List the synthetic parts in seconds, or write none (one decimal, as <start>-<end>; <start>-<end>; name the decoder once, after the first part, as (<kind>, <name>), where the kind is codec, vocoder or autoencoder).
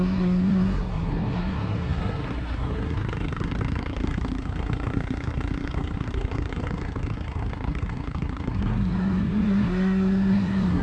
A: 0.0-10.8 (codec, SNAC)